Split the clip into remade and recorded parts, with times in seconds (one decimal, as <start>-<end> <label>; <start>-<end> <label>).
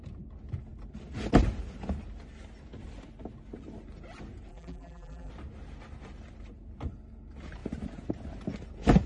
0.0-4.5 recorded; 4.5-5.3 remade; 5.3-9.1 recorded